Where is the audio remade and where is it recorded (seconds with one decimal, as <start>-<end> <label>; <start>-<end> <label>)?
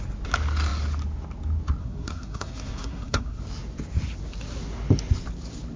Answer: 0.0-1.8 recorded; 1.8-3.4 remade; 3.4-5.8 recorded